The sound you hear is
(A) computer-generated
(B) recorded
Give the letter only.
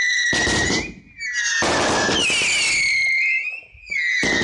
B